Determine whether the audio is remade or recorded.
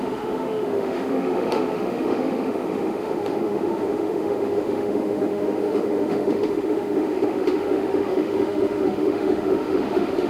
remade